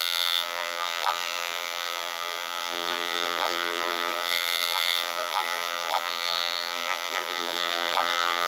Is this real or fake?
fake